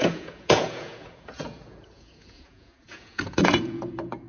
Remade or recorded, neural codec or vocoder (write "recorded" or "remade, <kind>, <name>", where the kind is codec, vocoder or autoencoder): remade, vocoder, Vocos